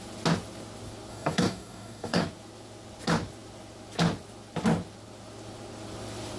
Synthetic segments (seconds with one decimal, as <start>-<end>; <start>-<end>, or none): 1.1-2.2